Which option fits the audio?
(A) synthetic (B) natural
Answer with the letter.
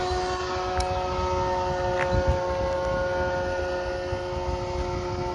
B